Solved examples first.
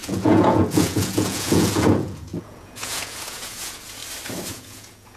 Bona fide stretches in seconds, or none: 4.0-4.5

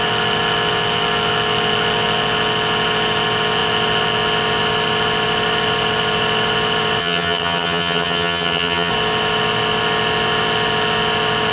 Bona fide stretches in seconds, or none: 0.0-7.0; 8.9-11.5

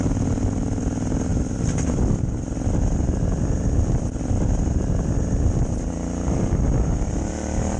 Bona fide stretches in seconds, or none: 0.0-7.8